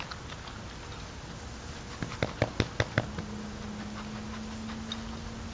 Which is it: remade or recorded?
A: recorded